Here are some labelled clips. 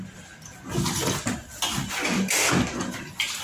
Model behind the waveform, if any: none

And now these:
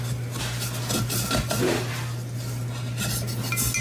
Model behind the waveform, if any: none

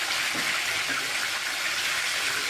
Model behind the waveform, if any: none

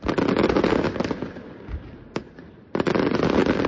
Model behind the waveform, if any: none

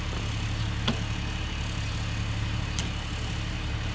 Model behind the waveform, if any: none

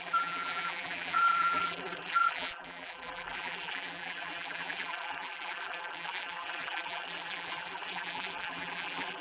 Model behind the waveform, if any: vocoder, BigVGAN v2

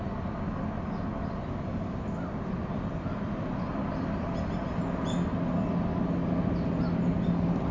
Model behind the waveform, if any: none